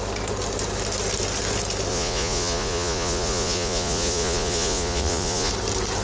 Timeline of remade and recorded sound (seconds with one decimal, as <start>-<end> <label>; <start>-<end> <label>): 0.0-1.9 recorded; 1.9-5.5 remade; 5.5-6.0 recorded